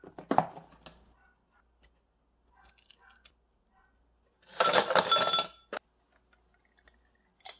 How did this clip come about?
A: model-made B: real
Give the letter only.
B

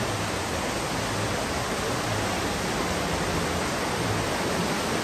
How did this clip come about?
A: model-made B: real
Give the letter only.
B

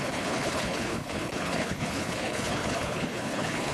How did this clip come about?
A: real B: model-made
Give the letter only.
B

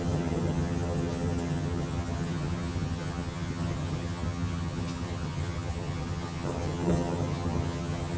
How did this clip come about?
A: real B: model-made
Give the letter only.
B